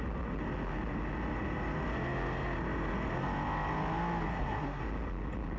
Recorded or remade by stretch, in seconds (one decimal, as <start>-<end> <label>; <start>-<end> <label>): 0.0-4.3 recorded; 4.3-4.8 remade; 4.8-5.6 recorded